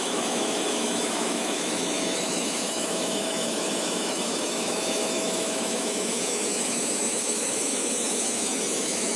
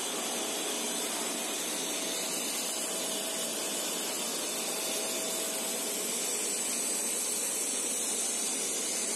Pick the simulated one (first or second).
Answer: first